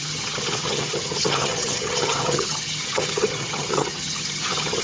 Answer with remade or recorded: remade